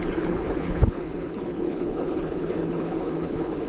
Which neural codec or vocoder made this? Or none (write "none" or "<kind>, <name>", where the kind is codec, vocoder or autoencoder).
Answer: codec, HILCodec